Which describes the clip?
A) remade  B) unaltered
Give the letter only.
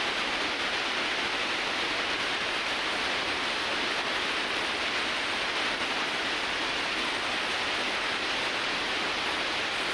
B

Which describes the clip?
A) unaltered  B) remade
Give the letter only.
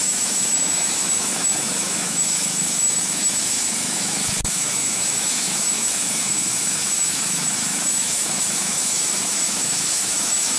B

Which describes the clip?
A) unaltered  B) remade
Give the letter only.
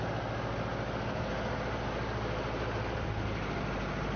A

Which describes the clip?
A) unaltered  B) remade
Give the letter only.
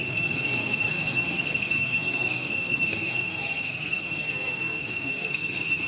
B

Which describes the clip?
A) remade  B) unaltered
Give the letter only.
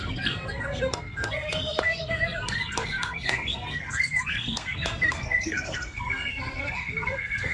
A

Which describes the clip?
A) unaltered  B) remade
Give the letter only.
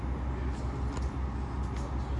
A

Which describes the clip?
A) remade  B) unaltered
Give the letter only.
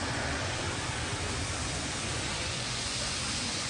A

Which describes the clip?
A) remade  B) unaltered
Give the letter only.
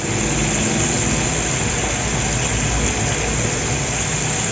B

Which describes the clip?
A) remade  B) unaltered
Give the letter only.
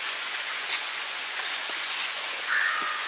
A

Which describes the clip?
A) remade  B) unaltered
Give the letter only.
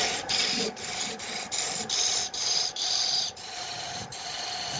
A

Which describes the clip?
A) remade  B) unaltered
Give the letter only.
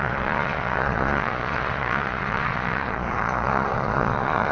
A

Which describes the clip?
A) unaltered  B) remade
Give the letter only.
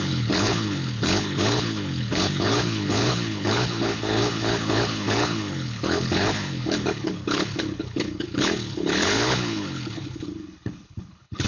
B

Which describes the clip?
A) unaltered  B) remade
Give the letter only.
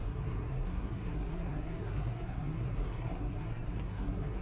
B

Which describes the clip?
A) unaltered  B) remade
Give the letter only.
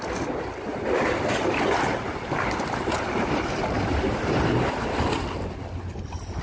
A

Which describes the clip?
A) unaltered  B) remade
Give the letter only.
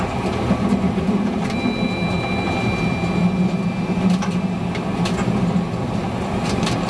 A